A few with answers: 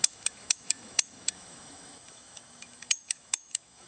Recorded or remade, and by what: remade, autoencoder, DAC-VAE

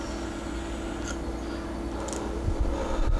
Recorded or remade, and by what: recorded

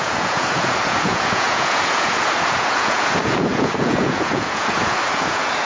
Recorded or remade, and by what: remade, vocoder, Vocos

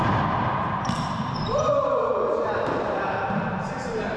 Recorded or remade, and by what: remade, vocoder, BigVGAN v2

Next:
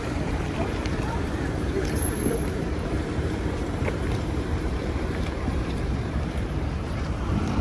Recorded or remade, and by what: remade, vocoder, BigVGAN v2